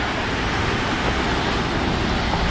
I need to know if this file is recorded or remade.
recorded